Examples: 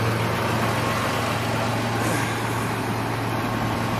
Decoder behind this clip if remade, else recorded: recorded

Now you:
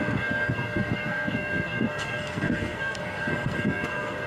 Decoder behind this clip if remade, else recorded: remade, codec, SNAC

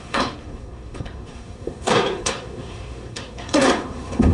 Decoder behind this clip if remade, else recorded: remade, codec, SNAC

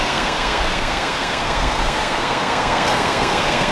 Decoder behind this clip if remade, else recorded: remade, codec, SNAC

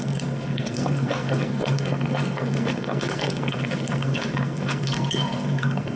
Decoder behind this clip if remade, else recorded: remade, codec, SNAC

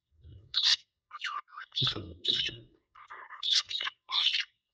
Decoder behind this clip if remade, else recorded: remade, codec, SNAC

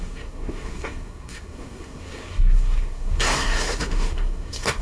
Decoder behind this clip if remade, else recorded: remade, codec, SNAC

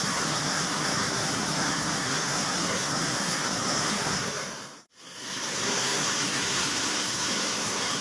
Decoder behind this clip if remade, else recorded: remade, codec, SNAC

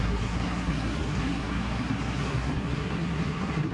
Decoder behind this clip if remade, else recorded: remade, codec, SNAC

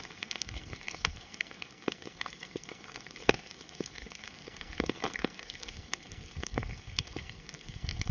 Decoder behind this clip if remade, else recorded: remade, codec, SNAC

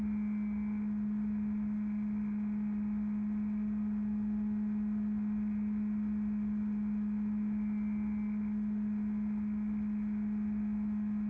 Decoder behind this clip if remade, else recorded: recorded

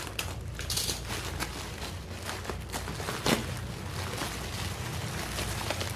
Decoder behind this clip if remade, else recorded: recorded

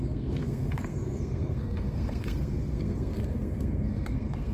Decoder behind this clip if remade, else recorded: remade, codec, SNAC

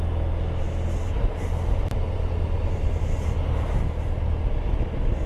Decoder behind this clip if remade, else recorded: recorded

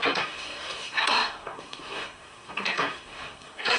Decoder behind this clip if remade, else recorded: remade, codec, SNAC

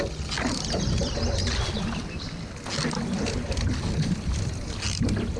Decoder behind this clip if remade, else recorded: recorded